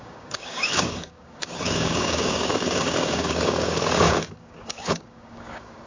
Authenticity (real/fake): fake